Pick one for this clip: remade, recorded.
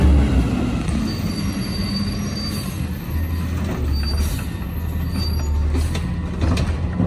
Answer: recorded